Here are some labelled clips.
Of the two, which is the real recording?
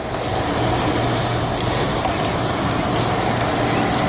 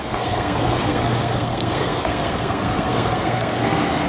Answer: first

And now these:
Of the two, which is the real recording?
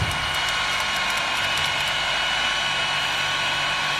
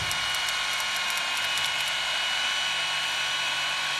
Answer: second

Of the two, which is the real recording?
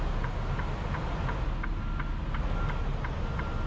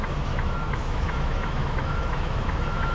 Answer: first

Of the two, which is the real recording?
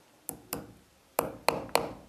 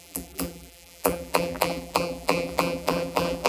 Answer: first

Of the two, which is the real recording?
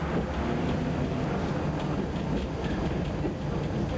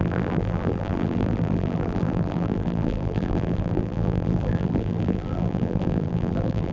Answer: first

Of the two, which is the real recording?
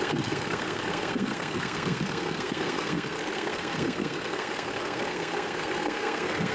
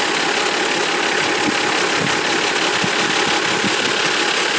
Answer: second